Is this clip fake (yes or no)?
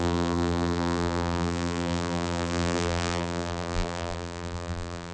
yes